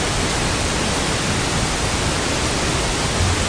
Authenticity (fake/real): real